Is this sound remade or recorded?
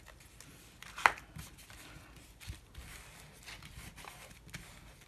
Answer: recorded